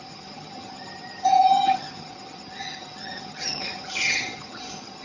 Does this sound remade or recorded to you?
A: remade